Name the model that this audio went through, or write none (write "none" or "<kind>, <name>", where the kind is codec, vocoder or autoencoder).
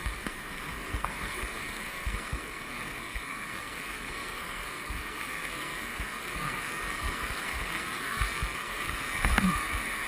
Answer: codec, SNAC